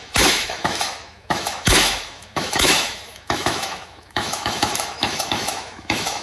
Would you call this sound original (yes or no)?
no